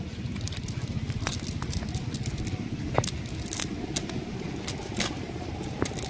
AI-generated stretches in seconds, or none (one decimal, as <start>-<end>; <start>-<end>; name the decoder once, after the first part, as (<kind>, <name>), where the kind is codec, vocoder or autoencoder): none